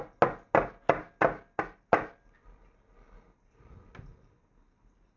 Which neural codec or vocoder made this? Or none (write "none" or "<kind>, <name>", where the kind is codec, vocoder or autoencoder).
none